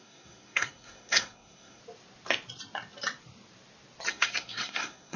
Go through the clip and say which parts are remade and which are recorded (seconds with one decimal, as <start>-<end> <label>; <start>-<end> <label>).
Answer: 0.0-1.8 remade; 1.8-4.1 recorded; 4.1-5.2 remade